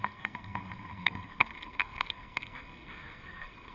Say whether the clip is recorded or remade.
remade